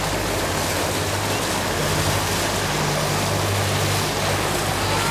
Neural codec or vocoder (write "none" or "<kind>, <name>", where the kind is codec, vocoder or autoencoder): none